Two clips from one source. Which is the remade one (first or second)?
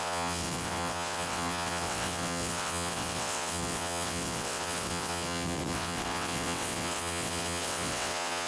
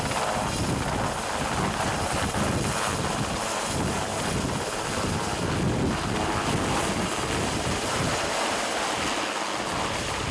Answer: first